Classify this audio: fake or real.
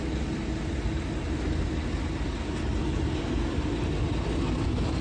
real